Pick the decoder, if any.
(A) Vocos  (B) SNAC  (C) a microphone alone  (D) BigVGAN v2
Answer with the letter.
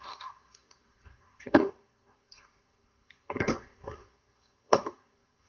B